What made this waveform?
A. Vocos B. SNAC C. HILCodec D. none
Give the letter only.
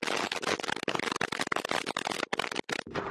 D